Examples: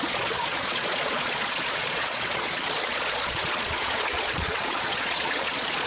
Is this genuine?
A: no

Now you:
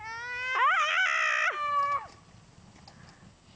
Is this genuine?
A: yes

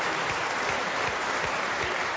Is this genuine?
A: yes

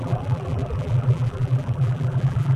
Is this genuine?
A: no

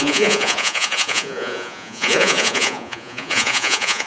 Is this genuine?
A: no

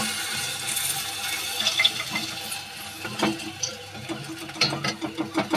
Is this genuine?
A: yes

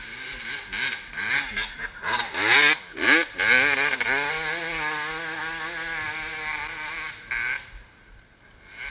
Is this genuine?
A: yes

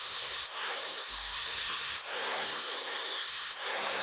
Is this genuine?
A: no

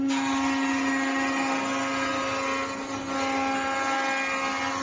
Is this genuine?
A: yes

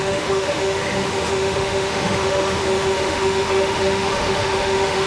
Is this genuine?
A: no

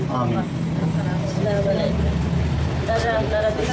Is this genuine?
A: yes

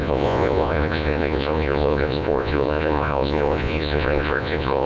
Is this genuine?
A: no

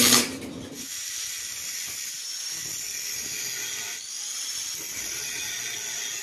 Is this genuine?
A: yes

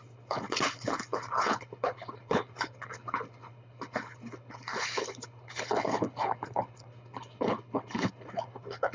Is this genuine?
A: no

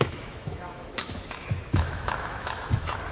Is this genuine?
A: no